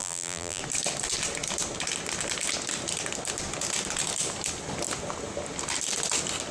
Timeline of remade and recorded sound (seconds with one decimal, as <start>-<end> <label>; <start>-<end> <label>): 0.0-0.6 remade; 0.6-6.5 recorded